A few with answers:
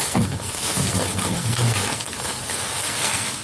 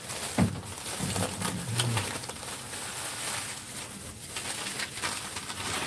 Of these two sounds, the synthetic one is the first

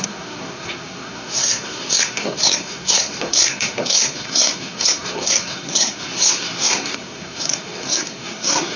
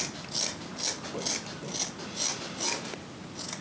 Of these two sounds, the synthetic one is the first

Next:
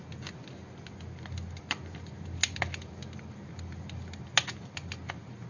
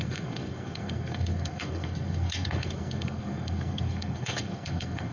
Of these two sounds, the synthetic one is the second